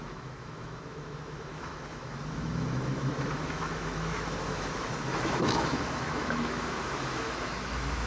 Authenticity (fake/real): fake